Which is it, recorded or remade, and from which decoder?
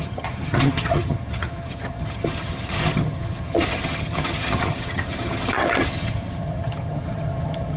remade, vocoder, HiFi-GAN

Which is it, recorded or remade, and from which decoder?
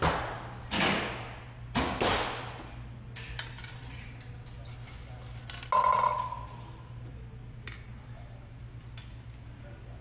recorded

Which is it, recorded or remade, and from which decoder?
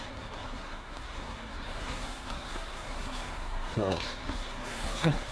remade, codec, SNAC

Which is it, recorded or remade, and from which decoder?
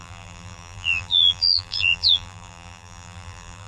remade, vocoder, BigVGAN v2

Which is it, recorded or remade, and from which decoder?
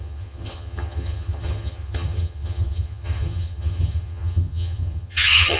remade, vocoder, HiFi-GAN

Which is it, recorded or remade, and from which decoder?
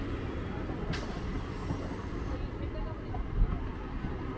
recorded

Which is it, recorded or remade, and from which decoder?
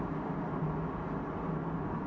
recorded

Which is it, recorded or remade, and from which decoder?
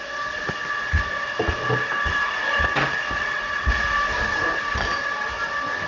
recorded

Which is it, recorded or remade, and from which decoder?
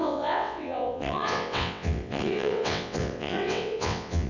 remade, vocoder, WaveNeXt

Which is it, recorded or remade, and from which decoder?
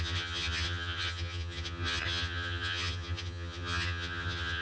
remade, vocoder, HiFi-GAN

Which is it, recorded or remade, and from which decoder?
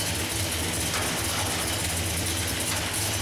recorded